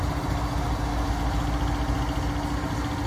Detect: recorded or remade recorded